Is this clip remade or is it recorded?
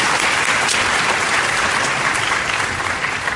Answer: recorded